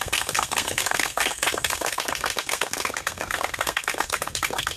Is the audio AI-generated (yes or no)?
yes